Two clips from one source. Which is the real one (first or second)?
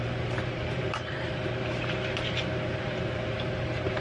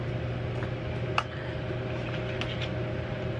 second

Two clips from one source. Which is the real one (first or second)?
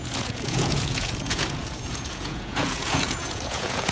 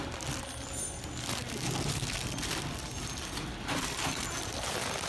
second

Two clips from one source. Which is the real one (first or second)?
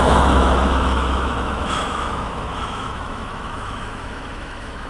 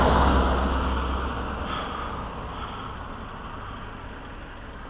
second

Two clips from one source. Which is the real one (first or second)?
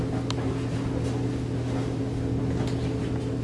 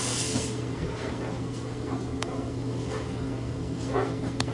first